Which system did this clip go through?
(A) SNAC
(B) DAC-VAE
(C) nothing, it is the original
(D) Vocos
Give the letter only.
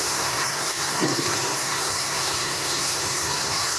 A